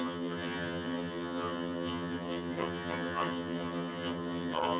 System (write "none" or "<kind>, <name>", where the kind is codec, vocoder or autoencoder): vocoder, HiFi-GAN